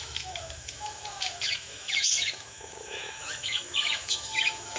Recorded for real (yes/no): no